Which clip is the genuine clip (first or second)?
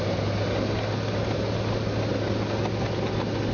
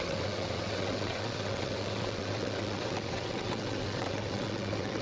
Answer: first